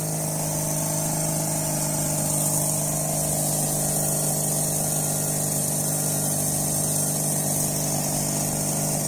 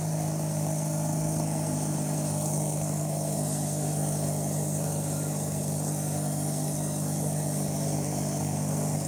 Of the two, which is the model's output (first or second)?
second